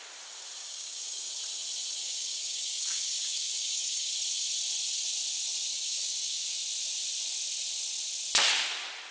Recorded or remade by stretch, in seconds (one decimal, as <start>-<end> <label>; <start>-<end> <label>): 0.0-0.6 recorded; 0.6-1.3 remade; 1.3-2.0 recorded; 2.0-4.1 remade; 4.1-5.7 recorded; 5.7-6.6 remade; 6.6-9.1 recorded